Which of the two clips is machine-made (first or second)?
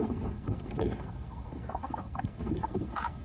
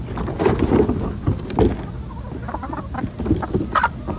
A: first